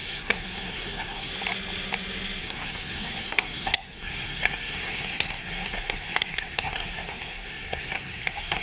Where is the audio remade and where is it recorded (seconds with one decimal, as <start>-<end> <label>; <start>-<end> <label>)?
0.0-1.3 remade; 1.3-2.4 recorded; 2.4-8.6 remade